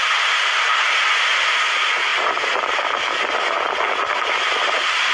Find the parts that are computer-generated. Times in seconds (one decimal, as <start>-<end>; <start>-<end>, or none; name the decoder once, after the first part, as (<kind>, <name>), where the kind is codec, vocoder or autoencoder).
none